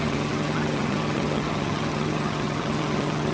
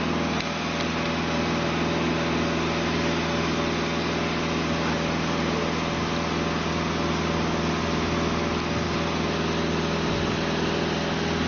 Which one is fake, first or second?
first